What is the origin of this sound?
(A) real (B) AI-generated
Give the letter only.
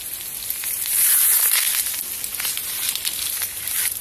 A